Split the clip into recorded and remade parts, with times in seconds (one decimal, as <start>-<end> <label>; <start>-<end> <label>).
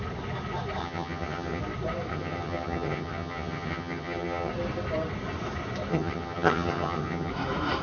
0.0-0.8 recorded; 0.8-1.6 remade; 1.6-2.1 recorded; 2.1-4.5 remade; 4.5-5.9 recorded; 5.9-7.3 remade; 7.3-7.8 recorded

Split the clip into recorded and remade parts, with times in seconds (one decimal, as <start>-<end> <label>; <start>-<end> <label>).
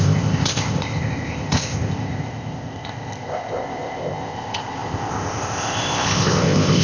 0.0-6.8 remade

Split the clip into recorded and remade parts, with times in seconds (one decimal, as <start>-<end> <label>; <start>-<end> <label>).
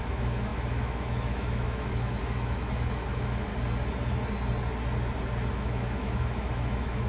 0.0-3.5 remade; 3.5-5.5 recorded; 5.5-7.1 remade